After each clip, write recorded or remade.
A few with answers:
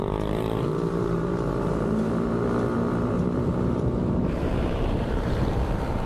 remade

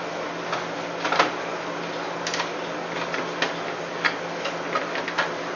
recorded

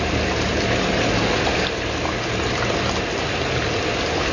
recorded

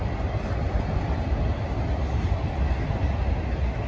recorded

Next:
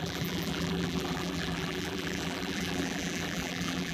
remade